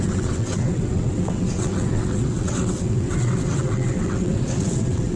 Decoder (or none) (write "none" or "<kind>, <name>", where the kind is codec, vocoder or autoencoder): vocoder, WaveNeXt